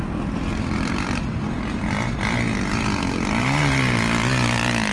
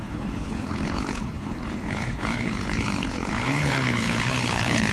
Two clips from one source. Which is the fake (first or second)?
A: second